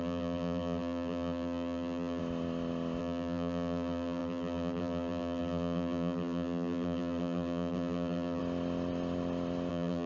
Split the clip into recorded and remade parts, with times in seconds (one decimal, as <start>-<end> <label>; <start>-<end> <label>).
0.0-2.2 remade; 2.2-3.0 recorded; 3.0-8.4 remade; 8.4-9.7 recorded; 9.7-10.1 remade